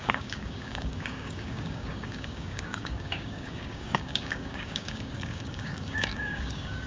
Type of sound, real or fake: fake